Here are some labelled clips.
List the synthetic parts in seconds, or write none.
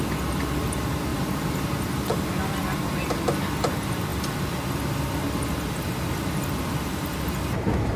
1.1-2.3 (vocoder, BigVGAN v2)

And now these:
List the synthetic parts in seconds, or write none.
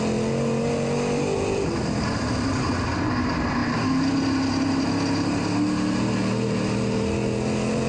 none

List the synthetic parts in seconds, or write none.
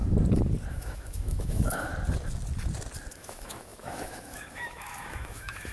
0.7-1.9 (autoencoder, DAC-VAE); 3.1-5.7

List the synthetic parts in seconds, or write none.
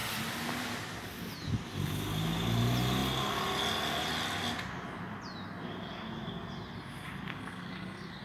7.3-8.2 (codec, SNAC)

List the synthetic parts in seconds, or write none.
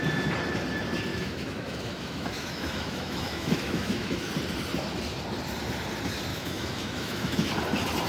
1.1-4.3 (autoencoder, DAC-VAE); 6.3-7.5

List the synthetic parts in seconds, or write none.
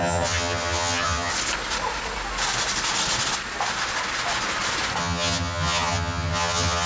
0.0-1.3 (vocoder, HiFi-GAN); 5.0-6.9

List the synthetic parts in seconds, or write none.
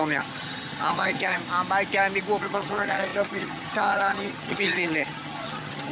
0.0-1.4 (vocoder, HiFi-GAN); 2.4-5.9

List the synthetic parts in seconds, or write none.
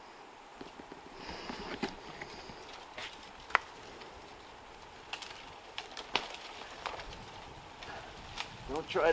none